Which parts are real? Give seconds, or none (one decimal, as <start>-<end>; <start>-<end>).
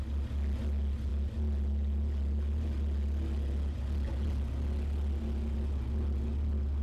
0.0-6.8